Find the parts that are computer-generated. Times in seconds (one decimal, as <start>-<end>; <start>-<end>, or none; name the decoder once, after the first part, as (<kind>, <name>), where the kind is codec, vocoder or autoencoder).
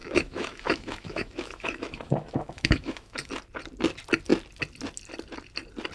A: 0.0-3.3 (autoencoder, DAC-VAE)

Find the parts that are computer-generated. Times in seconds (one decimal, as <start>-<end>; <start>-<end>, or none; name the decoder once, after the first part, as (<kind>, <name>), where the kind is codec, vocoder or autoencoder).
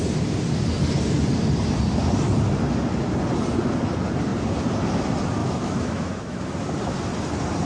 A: 5.4-6.4 (autoencoder, DAC-VAE)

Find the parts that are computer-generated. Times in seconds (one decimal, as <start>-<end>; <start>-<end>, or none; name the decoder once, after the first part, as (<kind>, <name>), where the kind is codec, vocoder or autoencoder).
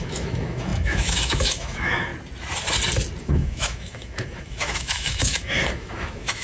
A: 0.0-2.1 (autoencoder, DAC-VAE); 3.2-6.4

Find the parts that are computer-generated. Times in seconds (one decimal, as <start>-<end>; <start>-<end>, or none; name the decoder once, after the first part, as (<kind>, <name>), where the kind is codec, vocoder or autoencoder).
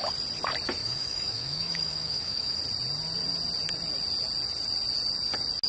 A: 0.8-2.6 (autoencoder, DAC-VAE)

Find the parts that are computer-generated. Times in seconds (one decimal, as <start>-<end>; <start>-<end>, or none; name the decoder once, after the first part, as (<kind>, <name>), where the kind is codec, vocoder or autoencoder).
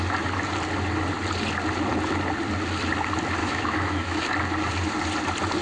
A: 3.4-4.2 (autoencoder, DAC-VAE)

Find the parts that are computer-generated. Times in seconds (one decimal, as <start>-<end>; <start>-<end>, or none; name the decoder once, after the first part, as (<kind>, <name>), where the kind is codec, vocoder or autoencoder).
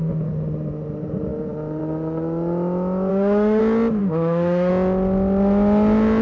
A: 3.1-3.6 (autoencoder, DAC-VAE); 4.0-4.7